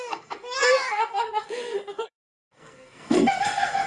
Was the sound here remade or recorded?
remade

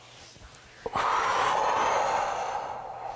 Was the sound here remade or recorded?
recorded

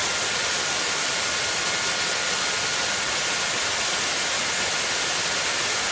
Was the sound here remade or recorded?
recorded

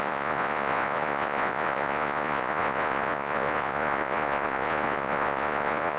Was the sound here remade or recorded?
remade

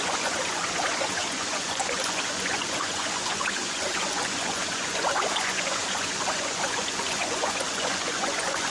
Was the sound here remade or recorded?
remade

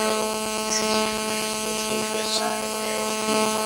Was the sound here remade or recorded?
recorded